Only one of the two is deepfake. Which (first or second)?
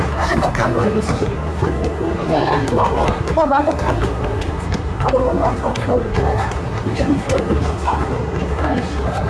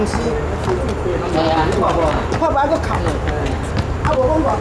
first